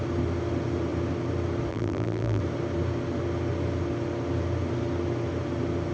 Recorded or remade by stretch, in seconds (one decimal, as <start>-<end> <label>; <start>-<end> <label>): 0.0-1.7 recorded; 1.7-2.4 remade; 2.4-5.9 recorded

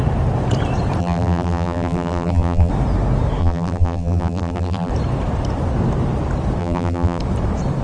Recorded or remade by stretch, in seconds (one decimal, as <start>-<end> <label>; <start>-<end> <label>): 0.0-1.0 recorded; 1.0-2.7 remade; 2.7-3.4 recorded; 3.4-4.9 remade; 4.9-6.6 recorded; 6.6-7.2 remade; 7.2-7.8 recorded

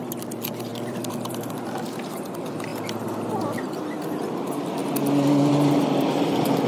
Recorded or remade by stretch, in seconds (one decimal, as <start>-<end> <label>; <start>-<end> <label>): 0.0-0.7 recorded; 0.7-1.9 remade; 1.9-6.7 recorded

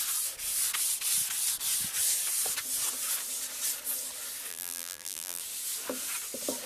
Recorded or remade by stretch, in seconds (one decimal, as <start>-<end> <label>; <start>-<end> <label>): 0.0-4.5 recorded; 4.5-5.4 remade; 5.4-6.7 recorded

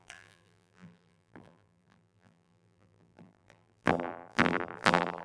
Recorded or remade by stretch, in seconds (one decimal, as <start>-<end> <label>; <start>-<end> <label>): 0.0-5.2 remade

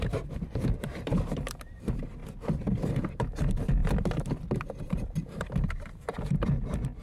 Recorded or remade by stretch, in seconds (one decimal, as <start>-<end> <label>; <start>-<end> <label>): 0.0-2.2 remade; 2.2-3.0 recorded; 3.0-3.8 remade; 3.8-4.8 recorded; 4.8-7.0 remade

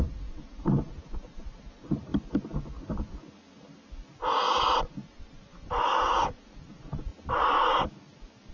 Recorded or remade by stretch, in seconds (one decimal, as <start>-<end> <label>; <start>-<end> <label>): 0.0-2.1 remade; 2.1-4.8 recorded; 4.8-7.1 remade; 7.1-8.5 recorded

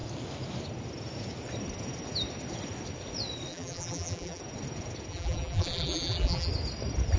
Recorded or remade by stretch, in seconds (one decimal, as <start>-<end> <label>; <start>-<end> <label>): 0.0-3.5 recorded; 3.5-4.4 remade; 4.4-5.1 recorded; 5.1-6.5 remade; 6.5-7.2 recorded